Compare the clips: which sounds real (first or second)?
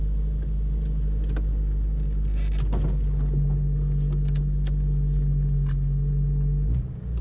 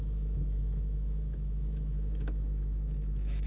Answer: first